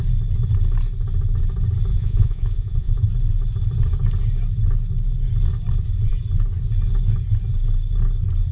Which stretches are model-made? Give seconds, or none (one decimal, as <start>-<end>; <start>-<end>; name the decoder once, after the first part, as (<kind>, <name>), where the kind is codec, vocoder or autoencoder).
1.9-3.0 (vocoder, Vocos)